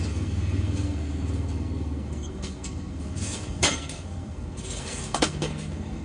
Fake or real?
fake